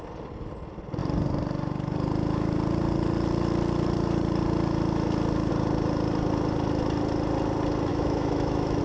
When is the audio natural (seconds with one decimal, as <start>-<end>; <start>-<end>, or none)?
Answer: 0.0-7.9